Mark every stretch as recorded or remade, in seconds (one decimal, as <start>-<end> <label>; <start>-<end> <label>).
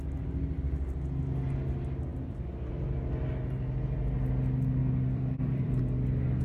0.0-2.1 recorded; 2.1-2.7 remade; 2.7-4.8 recorded; 4.8-5.8 remade; 5.8-6.4 recorded